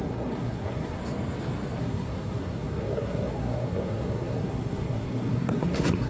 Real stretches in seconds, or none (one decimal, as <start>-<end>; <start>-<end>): 1.0-1.8